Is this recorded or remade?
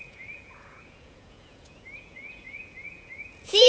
remade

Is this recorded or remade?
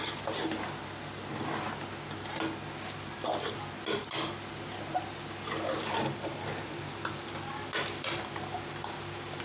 recorded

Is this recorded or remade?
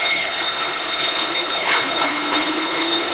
remade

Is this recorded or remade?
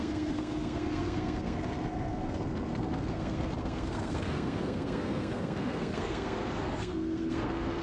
remade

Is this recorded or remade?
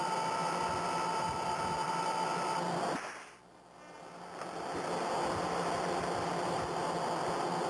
recorded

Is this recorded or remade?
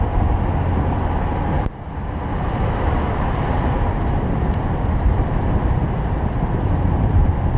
recorded